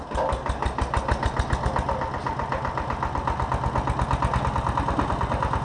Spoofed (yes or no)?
no